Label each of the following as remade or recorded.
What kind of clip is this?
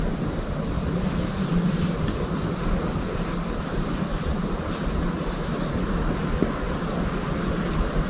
recorded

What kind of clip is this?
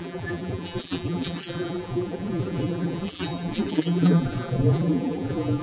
remade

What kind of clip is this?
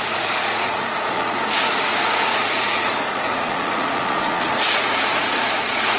remade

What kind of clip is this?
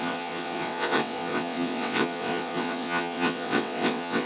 remade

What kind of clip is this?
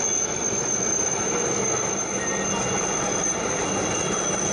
recorded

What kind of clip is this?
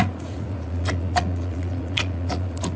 remade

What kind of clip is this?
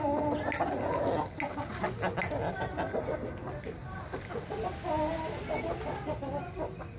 recorded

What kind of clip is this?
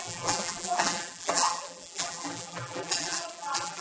remade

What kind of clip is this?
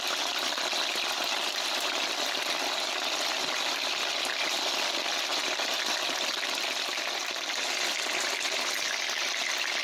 recorded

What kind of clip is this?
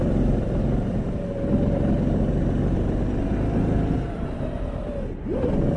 recorded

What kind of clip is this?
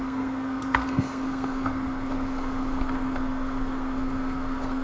remade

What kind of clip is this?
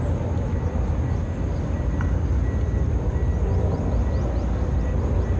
recorded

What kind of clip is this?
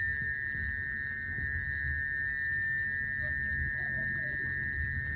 recorded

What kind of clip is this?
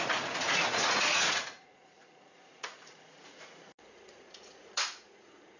remade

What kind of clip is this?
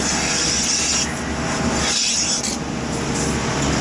recorded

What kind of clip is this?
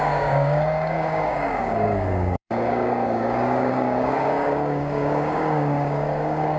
remade